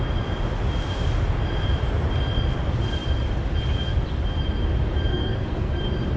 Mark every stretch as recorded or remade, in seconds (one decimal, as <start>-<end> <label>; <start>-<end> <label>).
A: 0.0-5.1 recorded; 5.1-5.8 remade; 5.8-6.2 recorded